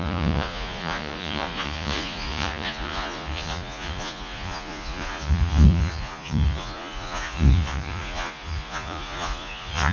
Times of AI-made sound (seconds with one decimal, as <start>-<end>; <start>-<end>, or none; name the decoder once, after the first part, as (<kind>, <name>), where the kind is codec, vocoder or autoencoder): 0.0-9.9 (vocoder, Vocos)